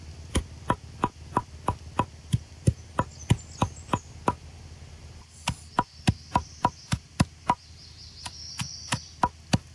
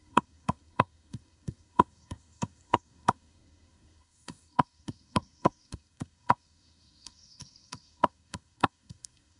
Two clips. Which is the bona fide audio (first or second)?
first